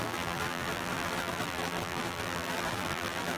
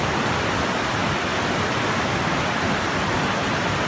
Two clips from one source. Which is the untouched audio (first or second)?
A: second